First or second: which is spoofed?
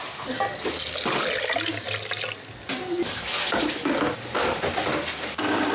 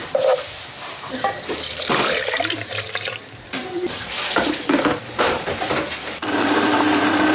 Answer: second